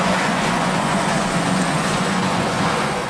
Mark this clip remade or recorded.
remade